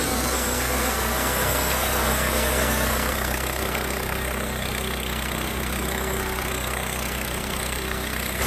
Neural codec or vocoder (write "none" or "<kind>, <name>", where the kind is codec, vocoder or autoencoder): codec, SNAC